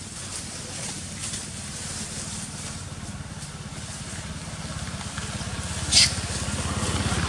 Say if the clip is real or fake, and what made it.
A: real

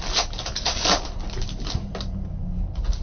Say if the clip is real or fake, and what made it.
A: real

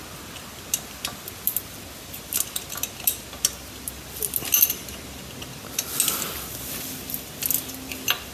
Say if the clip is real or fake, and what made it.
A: real